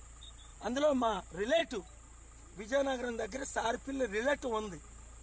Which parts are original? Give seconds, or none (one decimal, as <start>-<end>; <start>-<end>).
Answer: 0.0-0.5; 1.2-5.2